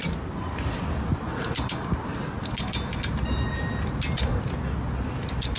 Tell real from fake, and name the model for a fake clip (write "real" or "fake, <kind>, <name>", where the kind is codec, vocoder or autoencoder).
real